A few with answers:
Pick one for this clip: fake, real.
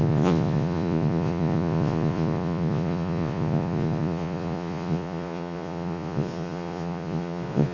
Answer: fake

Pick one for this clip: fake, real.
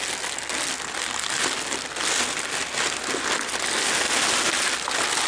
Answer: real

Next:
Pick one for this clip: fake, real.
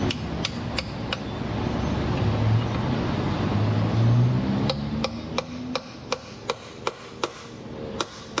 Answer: real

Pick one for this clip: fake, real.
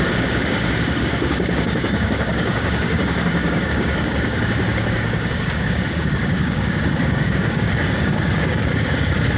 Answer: fake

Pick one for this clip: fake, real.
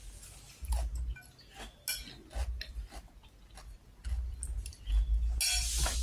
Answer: real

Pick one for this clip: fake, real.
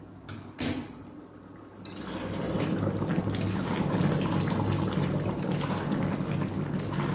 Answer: real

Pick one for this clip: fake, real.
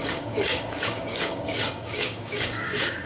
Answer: fake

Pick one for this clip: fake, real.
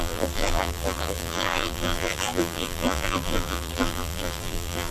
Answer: fake